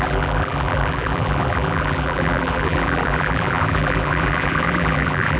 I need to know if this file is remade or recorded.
remade